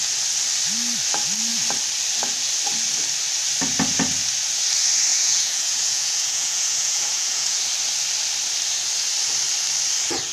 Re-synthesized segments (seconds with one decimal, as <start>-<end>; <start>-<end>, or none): 5.1-7.6